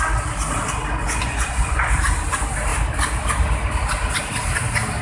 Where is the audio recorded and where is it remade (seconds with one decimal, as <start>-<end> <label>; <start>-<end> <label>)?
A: 0.0-1.0 recorded; 1.0-1.9 remade; 1.9-5.0 recorded